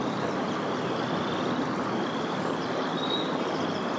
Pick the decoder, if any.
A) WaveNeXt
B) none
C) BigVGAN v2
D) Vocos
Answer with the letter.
B